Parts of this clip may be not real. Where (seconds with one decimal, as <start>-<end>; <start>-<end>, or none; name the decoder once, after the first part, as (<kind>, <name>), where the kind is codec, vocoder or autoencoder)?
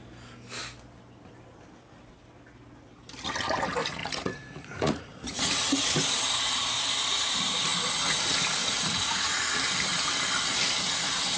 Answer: 4.0-5.5 (vocoder, Vocos); 8.6-9.5